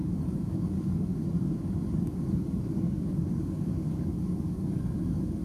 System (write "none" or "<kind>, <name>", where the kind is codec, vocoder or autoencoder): codec, DAC